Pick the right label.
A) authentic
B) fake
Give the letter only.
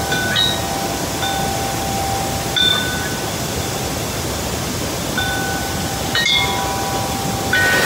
A